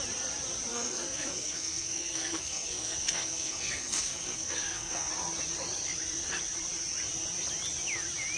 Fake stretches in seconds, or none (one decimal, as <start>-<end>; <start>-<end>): 0.7-5.1